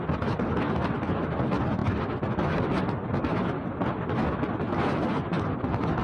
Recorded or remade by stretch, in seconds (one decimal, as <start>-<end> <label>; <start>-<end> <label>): 0.0-6.0 recorded